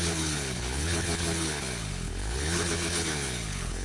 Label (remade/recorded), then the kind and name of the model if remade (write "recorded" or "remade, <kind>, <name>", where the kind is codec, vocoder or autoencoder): remade, codec, HILCodec